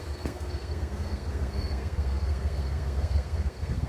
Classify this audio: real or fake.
fake